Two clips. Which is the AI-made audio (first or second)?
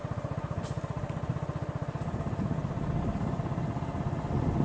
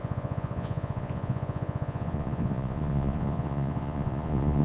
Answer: second